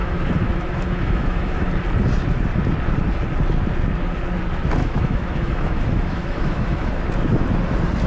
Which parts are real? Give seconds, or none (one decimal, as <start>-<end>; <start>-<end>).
1.7-4.8; 6.9-8.1